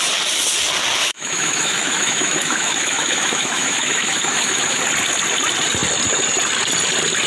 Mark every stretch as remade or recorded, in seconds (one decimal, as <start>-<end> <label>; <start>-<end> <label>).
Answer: 0.0-1.0 recorded; 1.0-4.8 remade; 4.8-7.3 recorded